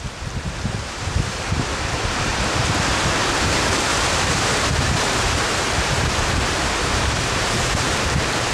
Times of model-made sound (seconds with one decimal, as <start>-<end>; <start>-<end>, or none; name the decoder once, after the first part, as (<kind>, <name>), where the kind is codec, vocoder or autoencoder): 0.0-2.3 (vocoder, BigVGAN v2); 3.1-8.5